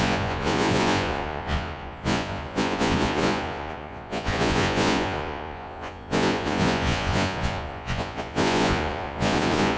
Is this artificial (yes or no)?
yes